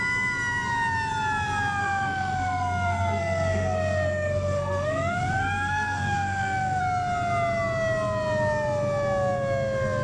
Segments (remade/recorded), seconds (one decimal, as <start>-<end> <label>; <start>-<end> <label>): 0.0-1.8 recorded; 1.8-6.8 remade; 6.8-10.0 recorded